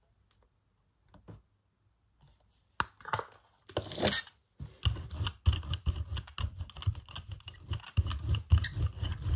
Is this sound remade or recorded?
recorded